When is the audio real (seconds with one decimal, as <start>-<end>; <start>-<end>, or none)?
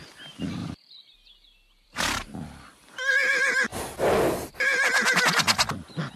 0.0-0.6; 2.7-6.2